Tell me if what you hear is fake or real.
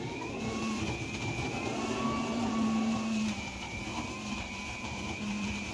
fake